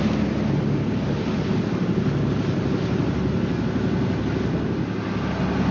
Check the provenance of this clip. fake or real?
real